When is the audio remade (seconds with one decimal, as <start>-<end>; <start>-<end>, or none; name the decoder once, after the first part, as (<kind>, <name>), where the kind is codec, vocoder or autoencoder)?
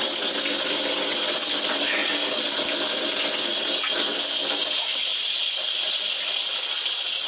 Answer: none